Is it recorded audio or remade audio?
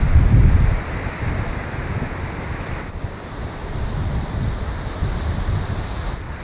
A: recorded